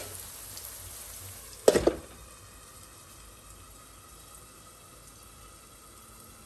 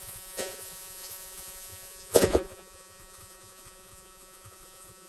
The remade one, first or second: second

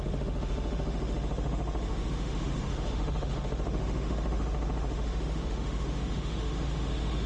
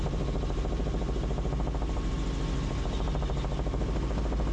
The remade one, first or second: first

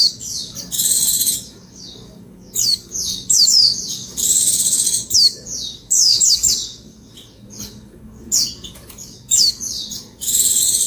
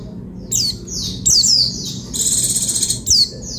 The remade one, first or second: first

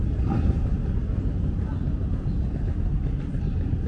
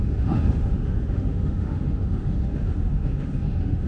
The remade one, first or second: second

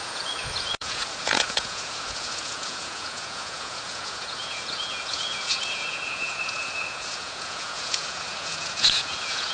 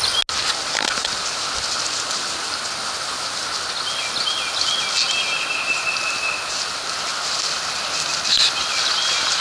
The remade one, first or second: first